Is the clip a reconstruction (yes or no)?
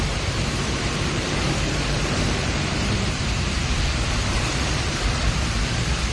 yes